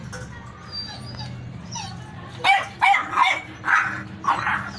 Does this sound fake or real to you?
real